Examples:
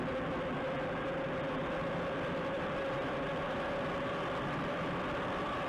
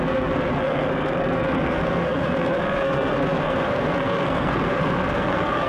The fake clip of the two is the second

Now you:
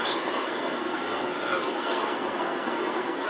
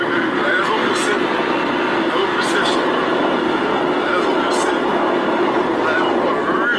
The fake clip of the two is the first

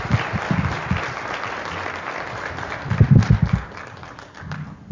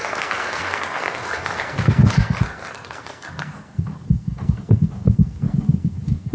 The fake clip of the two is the second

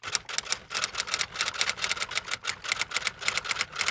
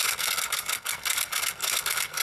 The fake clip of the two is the second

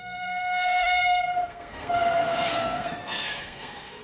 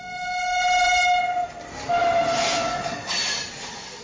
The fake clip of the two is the first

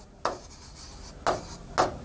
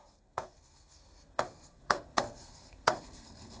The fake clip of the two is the second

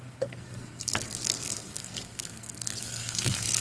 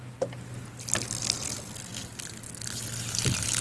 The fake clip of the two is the first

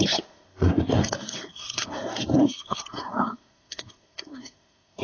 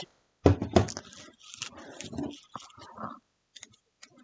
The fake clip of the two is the first